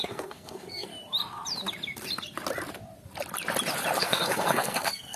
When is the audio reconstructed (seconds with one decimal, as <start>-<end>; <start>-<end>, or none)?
0.0-0.9; 4.0-5.2